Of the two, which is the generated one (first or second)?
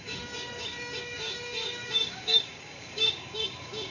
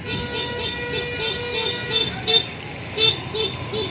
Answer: first